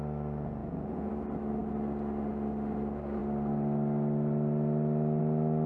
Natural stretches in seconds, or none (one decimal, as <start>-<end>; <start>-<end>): 0.0-0.6; 1.1-5.7